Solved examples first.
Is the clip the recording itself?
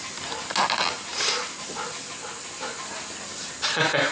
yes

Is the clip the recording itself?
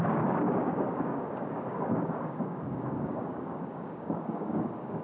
no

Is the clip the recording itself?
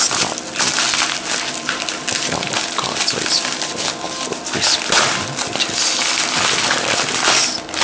yes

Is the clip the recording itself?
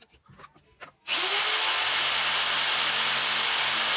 yes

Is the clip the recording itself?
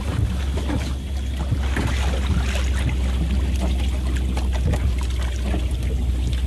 yes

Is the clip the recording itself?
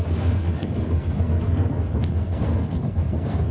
no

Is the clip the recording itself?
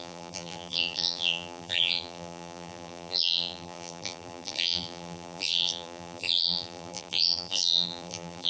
no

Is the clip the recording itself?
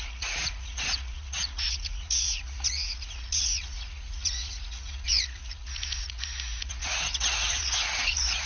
no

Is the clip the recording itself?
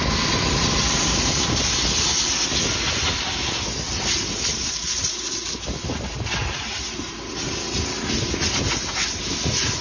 yes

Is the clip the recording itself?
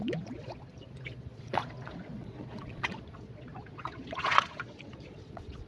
no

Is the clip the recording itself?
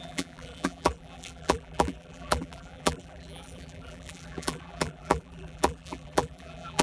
no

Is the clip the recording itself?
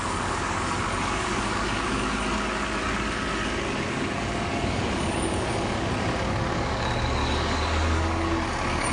no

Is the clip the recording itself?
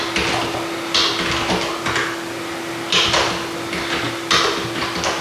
yes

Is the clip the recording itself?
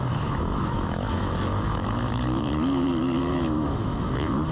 no